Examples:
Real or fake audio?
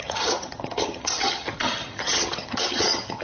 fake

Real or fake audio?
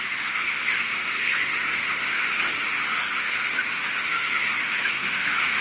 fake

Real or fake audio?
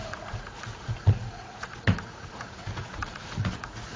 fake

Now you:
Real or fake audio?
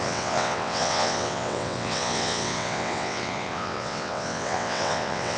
fake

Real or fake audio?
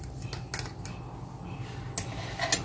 real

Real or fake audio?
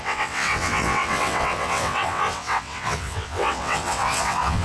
fake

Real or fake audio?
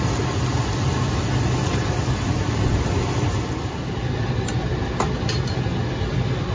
real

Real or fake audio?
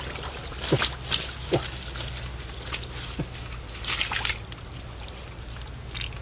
real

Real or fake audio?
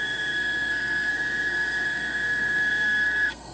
fake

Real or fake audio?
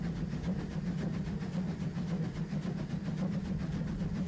real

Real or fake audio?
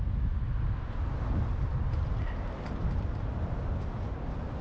real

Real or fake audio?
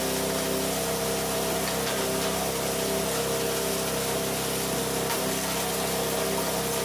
real